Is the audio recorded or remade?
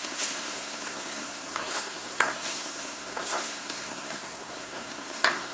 remade